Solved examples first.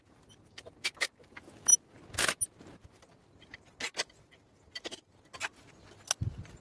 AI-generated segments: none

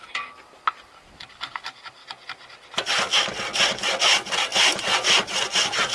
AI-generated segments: 4.5-5.3 (vocoder, BigVGAN v2)

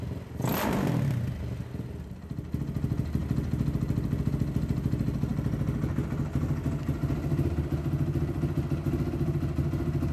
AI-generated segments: none

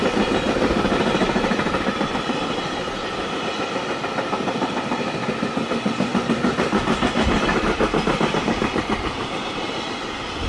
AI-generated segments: none

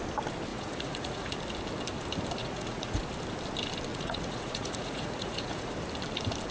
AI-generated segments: 0.5-1.4 (vocoder, Vocos); 2.4-3.0; 3.9-5.7

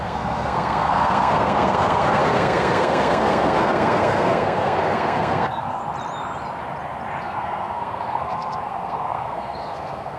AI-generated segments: 0.0-5.8 (codec, SNAC); 7.2-10.2